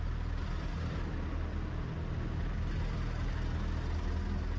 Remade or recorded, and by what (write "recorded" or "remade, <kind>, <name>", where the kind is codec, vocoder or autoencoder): recorded